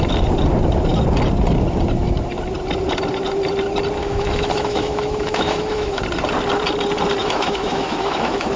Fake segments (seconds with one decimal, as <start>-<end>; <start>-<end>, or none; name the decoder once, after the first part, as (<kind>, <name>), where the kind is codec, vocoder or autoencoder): 4.0-6.0 (autoencoder, DAC-VAE); 7.2-8.6